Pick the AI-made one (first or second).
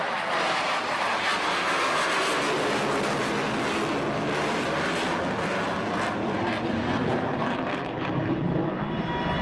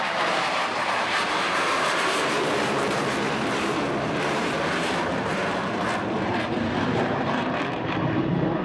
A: second